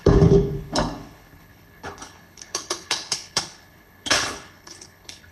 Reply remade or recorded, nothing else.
remade